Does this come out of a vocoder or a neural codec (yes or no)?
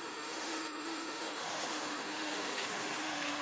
yes